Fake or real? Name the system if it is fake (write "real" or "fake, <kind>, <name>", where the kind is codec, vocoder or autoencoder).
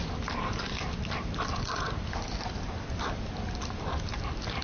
real